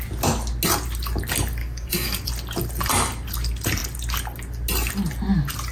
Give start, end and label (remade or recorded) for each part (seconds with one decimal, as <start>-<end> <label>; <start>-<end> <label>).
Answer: 0.0-1.6 recorded; 1.6-2.3 remade; 2.3-5.7 recorded